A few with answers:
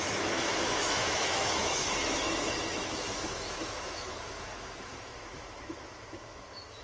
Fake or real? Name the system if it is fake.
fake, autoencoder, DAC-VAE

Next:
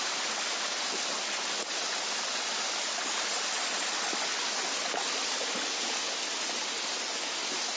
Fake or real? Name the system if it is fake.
real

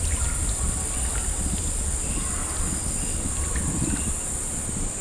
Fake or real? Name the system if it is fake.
real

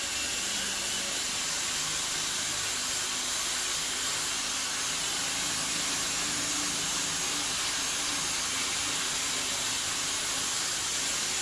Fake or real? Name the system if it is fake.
real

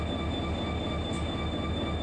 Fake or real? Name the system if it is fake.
real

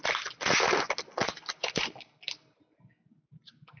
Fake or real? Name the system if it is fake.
real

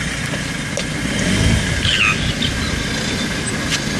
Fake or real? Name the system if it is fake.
real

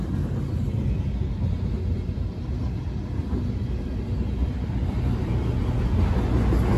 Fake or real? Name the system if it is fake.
real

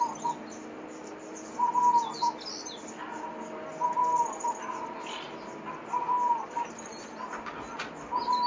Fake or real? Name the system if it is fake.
real